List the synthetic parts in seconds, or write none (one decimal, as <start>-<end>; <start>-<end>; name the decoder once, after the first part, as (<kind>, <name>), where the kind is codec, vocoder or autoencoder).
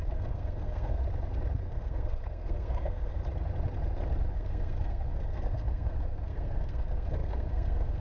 0.0-1.0 (codec, SNAC); 1.6-3.2; 4.3-8.0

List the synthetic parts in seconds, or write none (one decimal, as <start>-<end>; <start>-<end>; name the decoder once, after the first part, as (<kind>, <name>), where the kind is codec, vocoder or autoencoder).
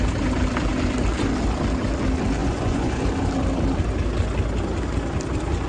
2.4-3.0 (vocoder, Vocos)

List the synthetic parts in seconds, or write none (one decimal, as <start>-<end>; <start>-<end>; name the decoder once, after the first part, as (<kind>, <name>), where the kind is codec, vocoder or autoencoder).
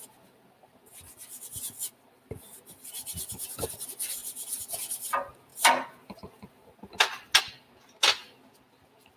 none